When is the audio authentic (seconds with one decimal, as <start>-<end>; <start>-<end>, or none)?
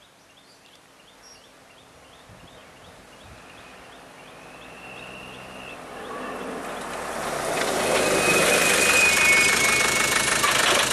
0.0-10.9